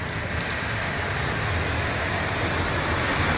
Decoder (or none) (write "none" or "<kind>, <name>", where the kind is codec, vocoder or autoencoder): none